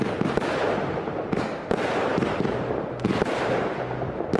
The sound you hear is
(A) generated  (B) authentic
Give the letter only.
B